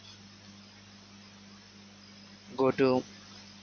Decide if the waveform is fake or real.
real